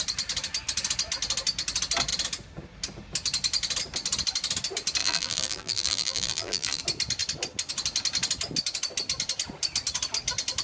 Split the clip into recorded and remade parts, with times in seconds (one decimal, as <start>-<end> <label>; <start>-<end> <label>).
0.0-5.0 recorded; 5.0-6.8 remade; 6.8-10.6 recorded